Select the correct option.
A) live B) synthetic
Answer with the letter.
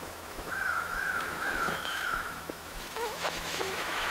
B